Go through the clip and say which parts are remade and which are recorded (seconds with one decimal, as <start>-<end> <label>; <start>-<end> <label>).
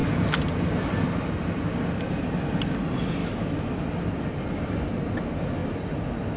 0.0-3.2 recorded; 3.2-3.8 remade; 3.8-6.4 recorded